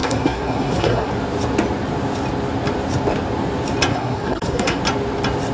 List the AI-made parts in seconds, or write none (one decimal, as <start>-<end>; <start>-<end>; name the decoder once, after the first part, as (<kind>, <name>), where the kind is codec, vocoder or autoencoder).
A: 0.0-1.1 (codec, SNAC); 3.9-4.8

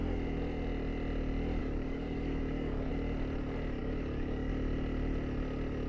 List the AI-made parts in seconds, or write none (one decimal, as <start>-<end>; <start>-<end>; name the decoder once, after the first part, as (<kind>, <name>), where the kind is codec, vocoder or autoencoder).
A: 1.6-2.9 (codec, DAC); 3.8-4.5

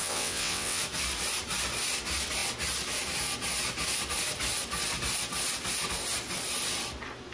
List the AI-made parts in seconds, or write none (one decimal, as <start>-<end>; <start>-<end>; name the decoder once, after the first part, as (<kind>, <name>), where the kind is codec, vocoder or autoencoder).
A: 0.0-0.8 (vocoder, WaveNeXt)

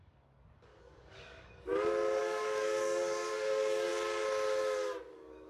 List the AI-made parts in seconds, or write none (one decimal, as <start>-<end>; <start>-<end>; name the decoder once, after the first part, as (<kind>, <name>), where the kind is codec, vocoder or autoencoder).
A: 0.0-1.7 (codec, DAC); 2.2-3.9; 5.1-5.5